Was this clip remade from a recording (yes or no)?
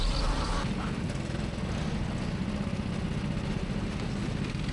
no